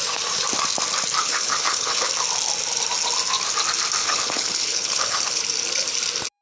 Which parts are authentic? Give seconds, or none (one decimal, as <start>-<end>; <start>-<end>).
0.0-1.2; 2.1-4.0; 5.4-6.4